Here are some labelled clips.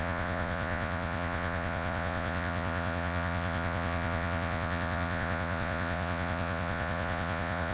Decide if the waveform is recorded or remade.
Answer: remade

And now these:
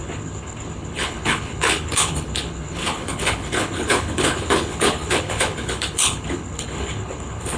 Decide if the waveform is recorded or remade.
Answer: remade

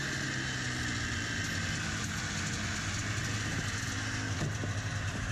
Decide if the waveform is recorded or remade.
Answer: recorded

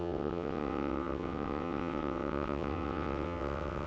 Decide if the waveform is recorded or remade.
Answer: remade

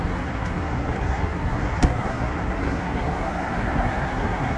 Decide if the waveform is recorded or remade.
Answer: remade